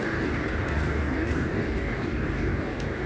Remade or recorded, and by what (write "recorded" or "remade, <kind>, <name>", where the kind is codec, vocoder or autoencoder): remade, codec, DAC